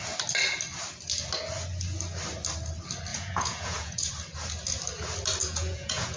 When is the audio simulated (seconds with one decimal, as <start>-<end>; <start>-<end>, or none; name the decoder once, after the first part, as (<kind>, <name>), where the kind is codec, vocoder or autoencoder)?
3.1-4.1 (vocoder, Vocos); 5.4-6.2